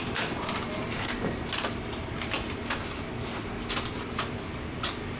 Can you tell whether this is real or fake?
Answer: fake